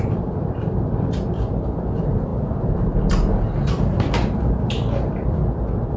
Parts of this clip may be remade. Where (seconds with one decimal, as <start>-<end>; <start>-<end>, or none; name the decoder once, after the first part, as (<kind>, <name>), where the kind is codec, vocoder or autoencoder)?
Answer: 0.0-6.0 (vocoder, BigVGAN v2)